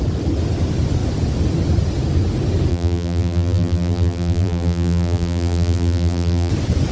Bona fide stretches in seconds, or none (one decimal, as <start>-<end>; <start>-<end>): 0.0-2.7; 6.5-6.9